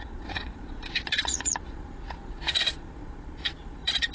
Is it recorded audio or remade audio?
remade